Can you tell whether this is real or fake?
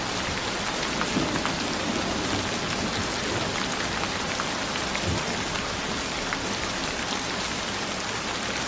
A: real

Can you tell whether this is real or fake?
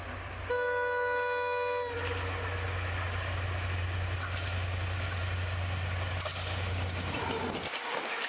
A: real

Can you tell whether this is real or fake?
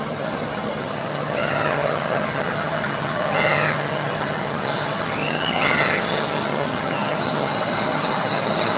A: fake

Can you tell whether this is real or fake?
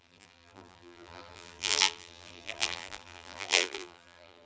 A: fake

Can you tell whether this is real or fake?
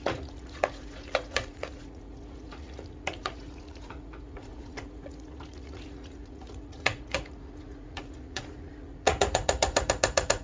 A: fake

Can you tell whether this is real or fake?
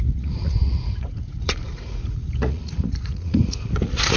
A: fake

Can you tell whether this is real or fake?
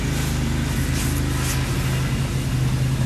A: real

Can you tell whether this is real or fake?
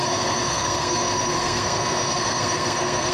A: fake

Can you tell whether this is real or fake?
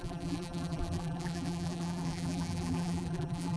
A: fake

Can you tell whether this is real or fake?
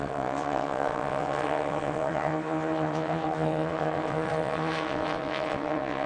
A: fake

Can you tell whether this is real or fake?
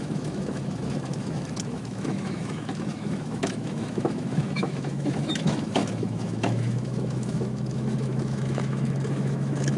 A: fake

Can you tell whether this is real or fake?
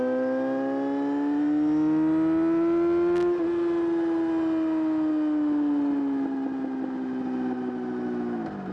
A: real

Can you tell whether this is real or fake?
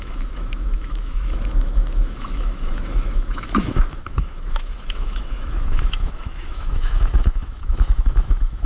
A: fake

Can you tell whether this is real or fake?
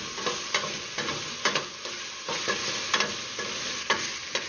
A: real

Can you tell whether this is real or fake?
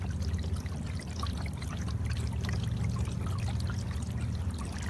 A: real